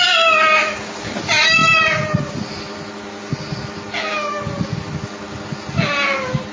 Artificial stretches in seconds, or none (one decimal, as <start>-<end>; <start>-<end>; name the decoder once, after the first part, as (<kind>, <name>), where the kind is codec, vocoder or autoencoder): none